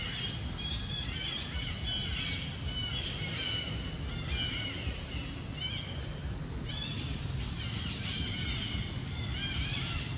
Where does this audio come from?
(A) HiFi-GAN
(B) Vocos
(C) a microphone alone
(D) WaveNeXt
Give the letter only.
C